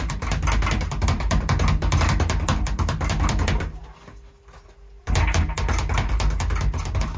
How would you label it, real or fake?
real